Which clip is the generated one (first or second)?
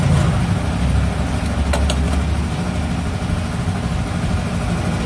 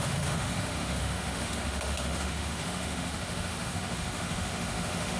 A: second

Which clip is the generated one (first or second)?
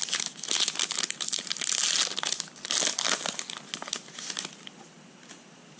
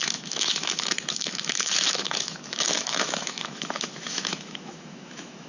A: second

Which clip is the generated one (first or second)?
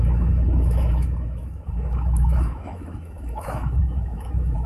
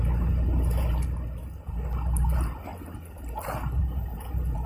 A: first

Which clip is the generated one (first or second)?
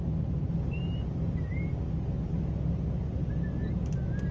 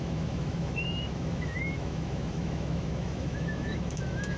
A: second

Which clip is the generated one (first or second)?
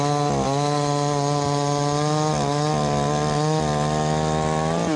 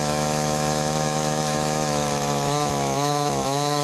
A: second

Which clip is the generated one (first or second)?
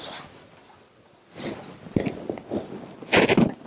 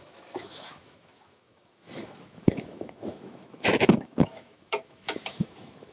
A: second